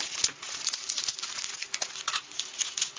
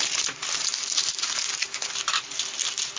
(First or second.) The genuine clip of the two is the second